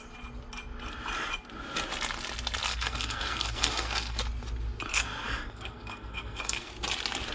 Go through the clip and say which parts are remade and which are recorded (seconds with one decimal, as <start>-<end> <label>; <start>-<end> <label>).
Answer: 0.0-2.7 recorded; 2.7-4.2 remade; 4.2-4.9 recorded; 4.9-6.7 remade; 6.7-7.3 recorded